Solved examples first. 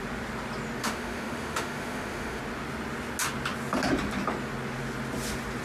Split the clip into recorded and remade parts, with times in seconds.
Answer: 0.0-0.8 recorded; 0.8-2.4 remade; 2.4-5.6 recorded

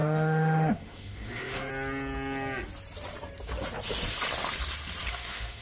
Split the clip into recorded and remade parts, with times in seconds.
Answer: 0.0-1.7 remade; 1.7-5.1 recorded; 5.1-5.6 remade

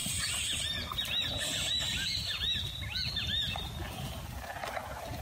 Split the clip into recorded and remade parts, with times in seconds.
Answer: 0.0-5.2 recorded

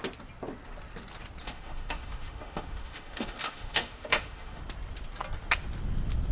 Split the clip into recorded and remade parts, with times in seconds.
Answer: 0.0-1.4 recorded; 1.4-4.6 remade; 4.6-6.3 recorded

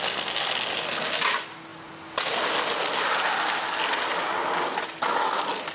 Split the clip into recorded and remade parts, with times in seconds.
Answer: 0.0-5.7 recorded

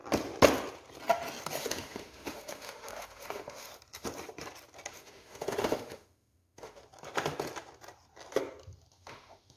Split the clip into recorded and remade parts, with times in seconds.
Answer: 0.0-1.6 recorded; 1.6-3.7 remade; 3.7-4.9 recorded; 4.9-6.8 remade; 6.8-8.9 recorded; 8.9-9.6 remade